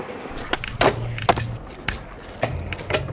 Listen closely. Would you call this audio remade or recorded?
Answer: recorded